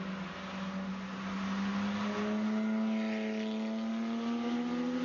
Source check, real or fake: real